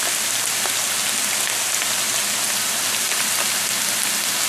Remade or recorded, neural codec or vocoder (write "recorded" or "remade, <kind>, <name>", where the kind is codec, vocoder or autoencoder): recorded